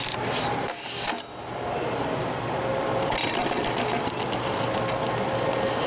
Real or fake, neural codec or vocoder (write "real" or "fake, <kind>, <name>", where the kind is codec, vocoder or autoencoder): fake, vocoder, BigVGAN v2